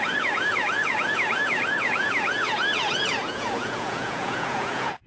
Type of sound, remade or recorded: remade